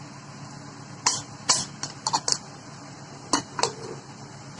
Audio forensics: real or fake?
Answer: real